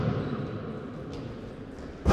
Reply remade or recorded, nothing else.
recorded